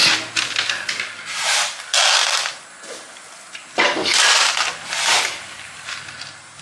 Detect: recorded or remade recorded